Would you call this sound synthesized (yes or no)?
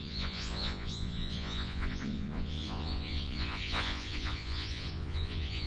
yes